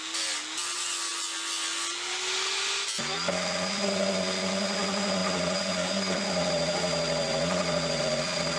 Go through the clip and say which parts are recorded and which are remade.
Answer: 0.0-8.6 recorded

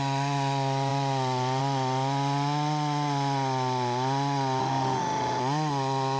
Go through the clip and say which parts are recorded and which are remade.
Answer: 0.0-4.6 recorded; 4.6-5.4 remade; 5.4-6.2 recorded

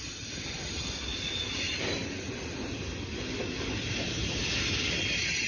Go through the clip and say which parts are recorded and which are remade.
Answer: 0.0-1.1 remade; 1.1-1.6 recorded; 1.6-2.0 remade; 2.0-3.9 recorded; 3.9-5.5 remade